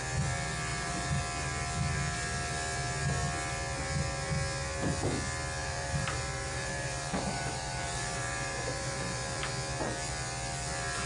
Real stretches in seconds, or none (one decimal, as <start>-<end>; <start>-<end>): 0.0-0.7; 1.2-5.6; 9.5-11.1